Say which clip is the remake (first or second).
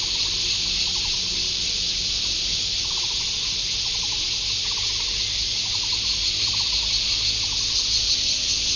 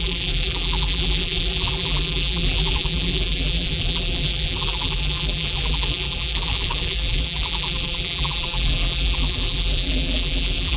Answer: second